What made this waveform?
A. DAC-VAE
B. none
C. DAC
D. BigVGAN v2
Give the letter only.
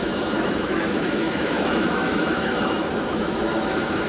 A